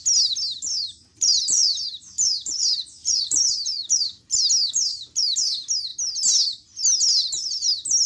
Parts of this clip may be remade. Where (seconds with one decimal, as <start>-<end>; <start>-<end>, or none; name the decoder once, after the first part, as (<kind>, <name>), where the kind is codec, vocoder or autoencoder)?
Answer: 1.1-4.4 (vocoder, BigVGAN v2); 4.9-5.4